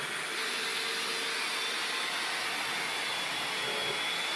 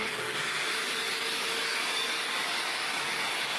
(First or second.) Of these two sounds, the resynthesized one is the second